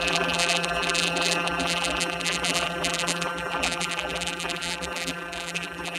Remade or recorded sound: remade